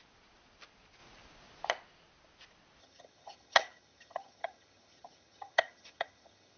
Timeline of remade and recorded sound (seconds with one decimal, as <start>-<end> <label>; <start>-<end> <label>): 0.0-2.8 recorded; 2.8-6.6 remade